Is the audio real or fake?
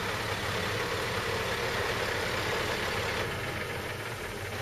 real